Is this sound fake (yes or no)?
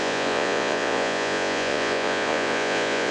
yes